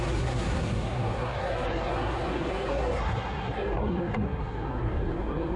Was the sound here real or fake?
fake